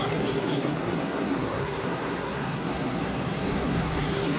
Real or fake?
fake